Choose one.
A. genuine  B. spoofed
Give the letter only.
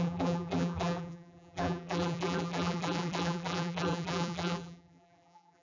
B